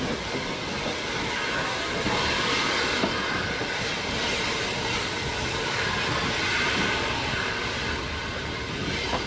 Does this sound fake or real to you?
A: real